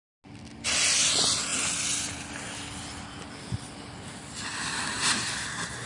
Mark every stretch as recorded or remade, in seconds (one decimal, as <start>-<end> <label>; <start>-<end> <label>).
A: 0.0-5.9 recorded